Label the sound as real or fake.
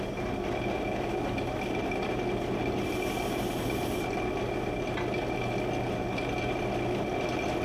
real